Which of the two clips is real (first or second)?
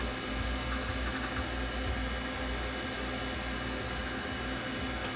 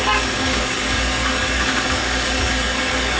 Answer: first